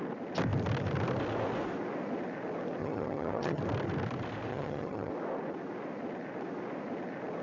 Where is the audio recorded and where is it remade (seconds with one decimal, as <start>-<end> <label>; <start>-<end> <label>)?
0.0-2.8 recorded; 2.8-3.6 remade; 3.6-4.5 recorded; 4.5-5.1 remade; 5.1-7.4 recorded